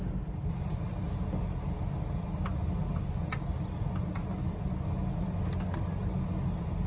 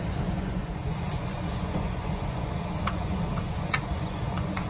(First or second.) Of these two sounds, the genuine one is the first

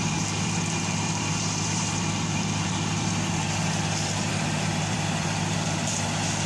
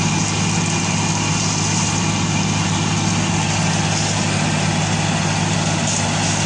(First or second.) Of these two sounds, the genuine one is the second